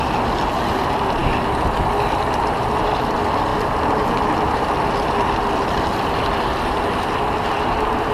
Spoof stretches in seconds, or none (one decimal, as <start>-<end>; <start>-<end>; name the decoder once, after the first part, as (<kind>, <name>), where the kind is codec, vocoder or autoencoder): 3.5-4.9 (vocoder, BigVGAN v2)